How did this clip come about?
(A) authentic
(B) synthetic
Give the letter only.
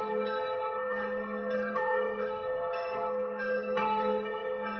B